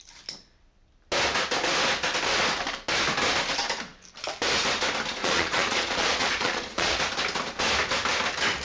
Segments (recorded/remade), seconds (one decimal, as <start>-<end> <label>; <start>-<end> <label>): 0.0-5.2 recorded; 5.2-7.0 remade; 7.0-8.6 recorded